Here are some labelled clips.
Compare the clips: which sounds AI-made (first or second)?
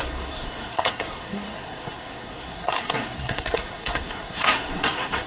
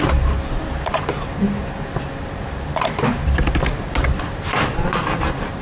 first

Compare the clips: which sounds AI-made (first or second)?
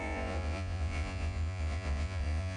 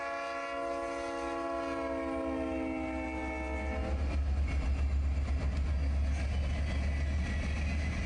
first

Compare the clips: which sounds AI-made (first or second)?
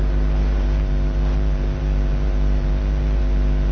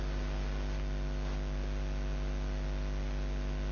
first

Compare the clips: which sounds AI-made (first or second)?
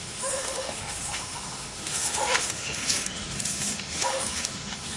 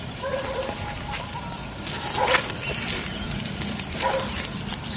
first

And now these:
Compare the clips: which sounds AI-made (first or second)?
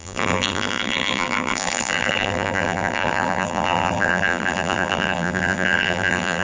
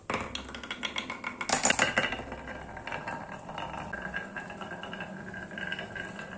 first